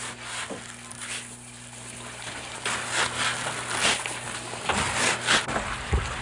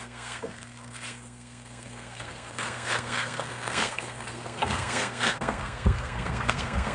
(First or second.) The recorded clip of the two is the first